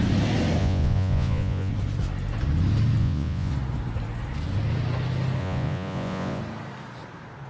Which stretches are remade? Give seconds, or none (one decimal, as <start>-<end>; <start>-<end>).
0.6-1.7; 3.0-3.5; 5.4-6.4